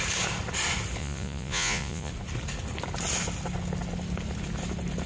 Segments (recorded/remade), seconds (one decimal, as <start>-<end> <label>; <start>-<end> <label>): 0.0-1.0 recorded; 1.0-2.1 remade; 2.1-5.1 recorded